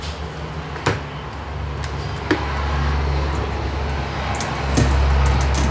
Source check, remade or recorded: recorded